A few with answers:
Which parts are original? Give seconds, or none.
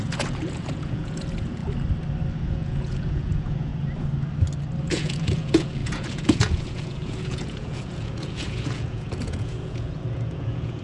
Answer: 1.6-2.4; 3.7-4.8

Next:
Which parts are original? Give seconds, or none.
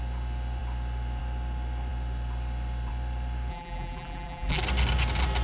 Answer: 0.0-3.5; 4.6-5.4